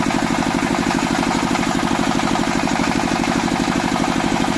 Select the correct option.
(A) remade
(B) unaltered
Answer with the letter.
A